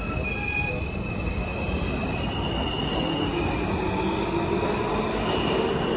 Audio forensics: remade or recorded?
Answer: recorded